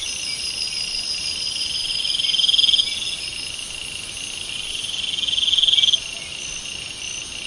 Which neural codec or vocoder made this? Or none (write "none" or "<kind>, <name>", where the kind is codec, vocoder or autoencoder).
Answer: none